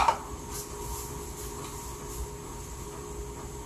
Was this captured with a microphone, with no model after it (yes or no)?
yes